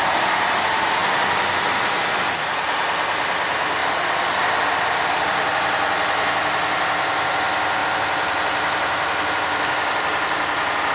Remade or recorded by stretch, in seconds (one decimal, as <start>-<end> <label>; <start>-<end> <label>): 0.0-3.8 recorded; 3.8-5.2 remade; 5.2-7.8 recorded; 7.8-10.9 remade